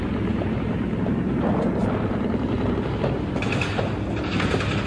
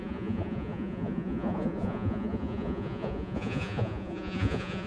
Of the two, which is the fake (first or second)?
second